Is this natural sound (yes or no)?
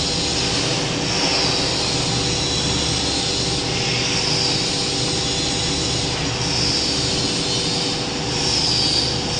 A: yes